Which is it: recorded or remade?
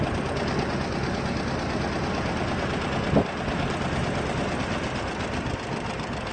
recorded